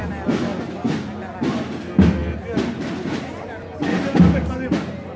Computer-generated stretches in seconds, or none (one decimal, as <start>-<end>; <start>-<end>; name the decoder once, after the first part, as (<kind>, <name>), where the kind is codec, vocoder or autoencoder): none